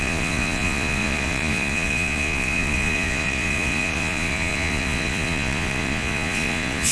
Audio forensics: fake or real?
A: fake